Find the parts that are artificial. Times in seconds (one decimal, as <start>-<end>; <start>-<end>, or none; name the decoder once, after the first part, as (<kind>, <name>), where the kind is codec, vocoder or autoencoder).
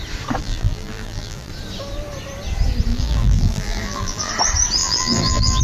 0.4-1.5 (vocoder, BigVGAN v2); 2.9-4.3; 4.8-5.6